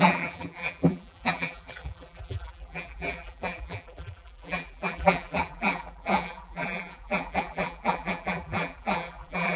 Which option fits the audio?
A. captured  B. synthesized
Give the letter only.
B